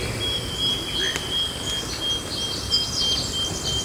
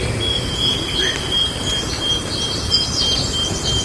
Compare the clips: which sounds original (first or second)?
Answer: first